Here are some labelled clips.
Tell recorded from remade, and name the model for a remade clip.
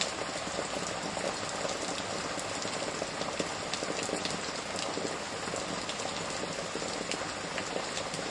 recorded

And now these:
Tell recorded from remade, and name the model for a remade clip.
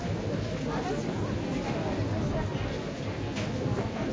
recorded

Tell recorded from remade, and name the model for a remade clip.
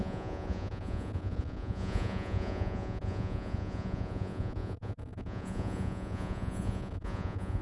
remade, vocoder, Vocos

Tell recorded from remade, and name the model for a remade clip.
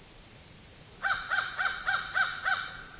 remade, vocoder, Vocos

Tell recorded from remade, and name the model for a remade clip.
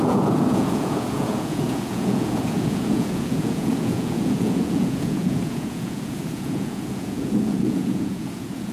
remade, vocoder, Vocos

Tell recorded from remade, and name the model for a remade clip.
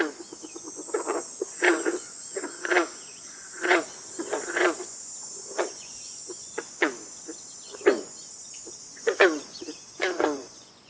remade, vocoder, Vocos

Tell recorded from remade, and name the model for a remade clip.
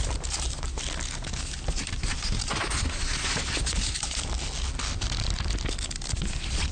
recorded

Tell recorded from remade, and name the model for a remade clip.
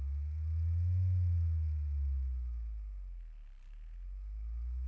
recorded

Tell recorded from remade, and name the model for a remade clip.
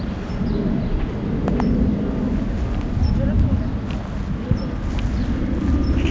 recorded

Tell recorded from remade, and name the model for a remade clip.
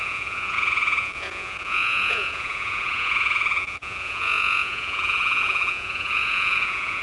remade, vocoder, Vocos